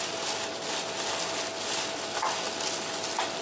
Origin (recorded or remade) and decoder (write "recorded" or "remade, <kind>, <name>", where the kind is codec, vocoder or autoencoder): recorded